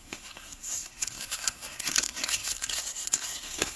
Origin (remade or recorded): remade